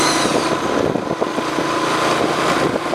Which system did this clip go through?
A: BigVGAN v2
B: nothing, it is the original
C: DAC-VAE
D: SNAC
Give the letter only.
B